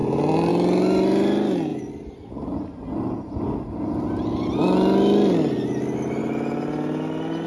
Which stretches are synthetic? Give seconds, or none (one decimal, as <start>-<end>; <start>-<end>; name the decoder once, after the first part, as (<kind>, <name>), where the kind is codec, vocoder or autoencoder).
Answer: none